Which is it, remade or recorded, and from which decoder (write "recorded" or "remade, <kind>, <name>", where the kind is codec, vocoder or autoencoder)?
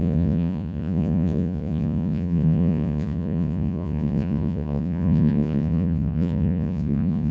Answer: remade, vocoder, Vocos